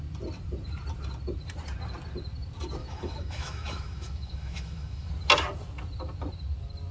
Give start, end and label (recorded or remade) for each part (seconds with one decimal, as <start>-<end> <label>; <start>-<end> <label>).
0.0-2.8 recorded; 2.8-5.1 remade; 5.1-6.9 recorded